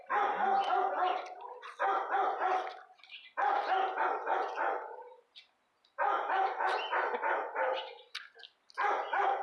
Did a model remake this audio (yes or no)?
no